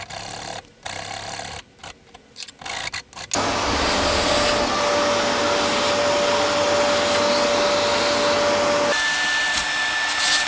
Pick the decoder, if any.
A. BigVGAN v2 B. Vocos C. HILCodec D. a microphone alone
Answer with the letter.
D